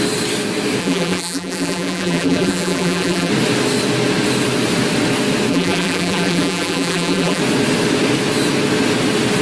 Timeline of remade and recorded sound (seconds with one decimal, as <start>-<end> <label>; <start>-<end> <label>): 0.0-0.8 recorded; 0.8-3.3 remade; 3.3-5.5 recorded; 5.5-7.4 remade; 7.4-9.4 recorded

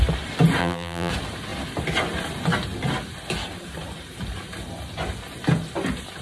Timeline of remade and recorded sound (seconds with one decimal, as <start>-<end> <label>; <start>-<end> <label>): 0.0-0.6 recorded; 0.6-1.1 remade; 1.1-6.2 recorded

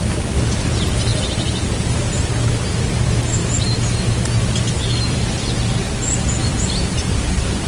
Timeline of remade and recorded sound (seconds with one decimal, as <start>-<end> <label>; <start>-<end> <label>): 0.0-1.1 recorded; 1.1-2.3 remade; 2.3-6.4 recorded; 6.4-7.7 remade